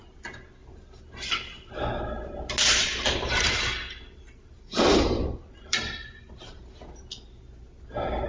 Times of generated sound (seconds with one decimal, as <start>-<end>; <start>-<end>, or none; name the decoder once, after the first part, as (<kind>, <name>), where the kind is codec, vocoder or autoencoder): 2.8-6.7 (vocoder, BigVGAN v2)